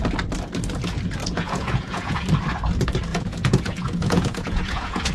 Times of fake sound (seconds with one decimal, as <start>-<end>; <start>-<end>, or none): 1.2-2.2; 3.1-5.1